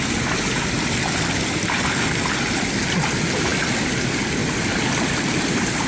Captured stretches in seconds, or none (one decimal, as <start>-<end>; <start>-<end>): 0.0-5.9